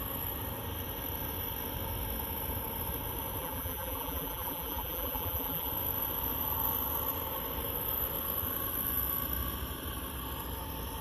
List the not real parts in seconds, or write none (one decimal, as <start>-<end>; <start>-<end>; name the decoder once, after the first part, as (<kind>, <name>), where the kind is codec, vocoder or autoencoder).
3.4-5.7 (vocoder, BigVGAN v2)